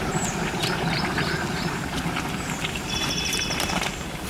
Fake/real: fake